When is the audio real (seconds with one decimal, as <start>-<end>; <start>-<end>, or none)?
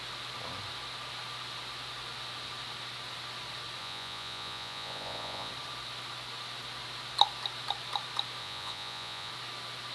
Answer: 0.0-3.8; 5.5-8.4; 9.3-9.9